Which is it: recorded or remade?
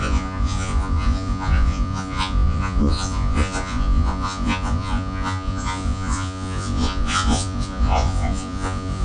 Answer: remade